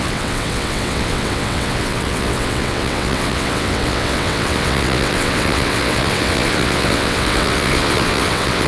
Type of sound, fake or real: fake